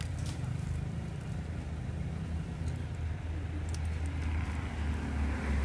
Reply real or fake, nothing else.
real